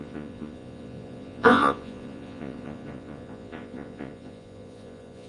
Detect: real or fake fake